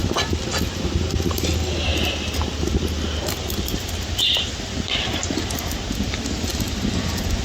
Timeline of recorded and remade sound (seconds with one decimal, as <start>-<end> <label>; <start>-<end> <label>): 0.0-1.1 recorded; 1.1-7.4 remade